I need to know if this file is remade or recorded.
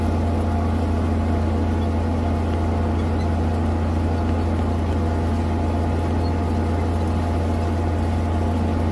recorded